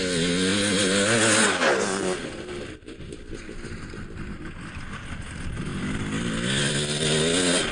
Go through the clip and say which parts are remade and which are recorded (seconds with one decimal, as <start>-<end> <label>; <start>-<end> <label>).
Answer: 0.0-7.7 recorded